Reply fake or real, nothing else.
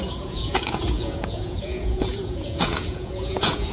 fake